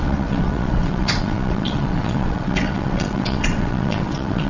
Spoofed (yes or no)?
yes